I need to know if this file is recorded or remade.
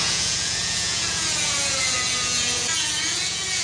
remade